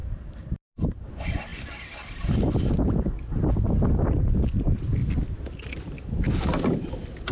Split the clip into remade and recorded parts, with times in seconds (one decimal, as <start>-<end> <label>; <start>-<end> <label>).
0.0-1.5 remade; 1.5-3.5 recorded; 3.5-5.0 remade; 5.0-5.8 recorded; 5.8-7.3 remade

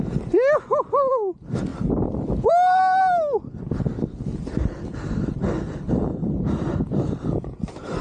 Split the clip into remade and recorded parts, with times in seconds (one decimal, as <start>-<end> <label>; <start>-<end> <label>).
0.0-8.0 recorded

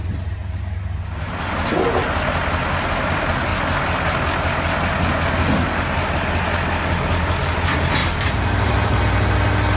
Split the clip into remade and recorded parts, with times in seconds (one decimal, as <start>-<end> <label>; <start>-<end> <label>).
0.0-8.0 recorded; 8.0-9.0 remade; 9.0-9.8 recorded

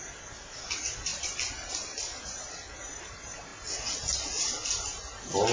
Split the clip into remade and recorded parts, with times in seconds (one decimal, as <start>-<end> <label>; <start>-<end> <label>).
0.0-1.1 recorded; 1.1-2.2 remade; 2.2-5.5 recorded